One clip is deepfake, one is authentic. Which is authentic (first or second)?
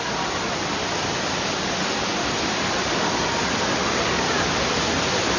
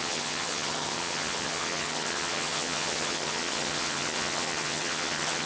first